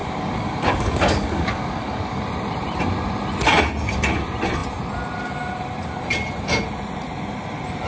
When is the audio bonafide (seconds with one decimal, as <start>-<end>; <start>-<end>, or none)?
2.2-7.9